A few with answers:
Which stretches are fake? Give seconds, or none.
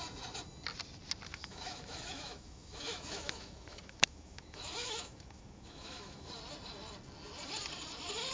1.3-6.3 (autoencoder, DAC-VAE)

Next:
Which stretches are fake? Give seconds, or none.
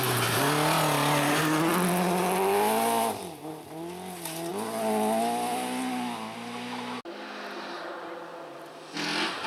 none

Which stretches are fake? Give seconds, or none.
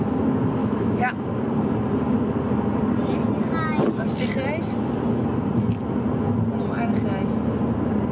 0.6-1.3 (autoencoder, DAC-VAE)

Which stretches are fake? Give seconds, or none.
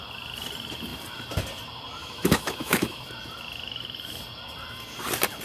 2.0-3.0 (autoencoder, DAC-VAE)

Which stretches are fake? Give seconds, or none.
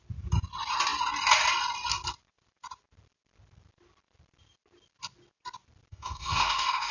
5.9-6.9 (autoencoder, DAC-VAE)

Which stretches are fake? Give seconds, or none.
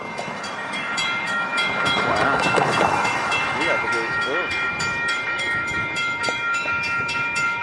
0.0-7.6 (autoencoder, DAC-VAE)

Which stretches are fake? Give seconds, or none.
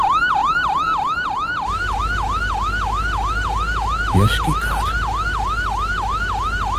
none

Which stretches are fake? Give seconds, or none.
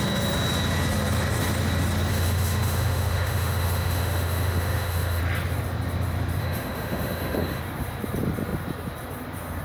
2.1-5.2 (autoencoder, DAC-VAE); 6.4-7.6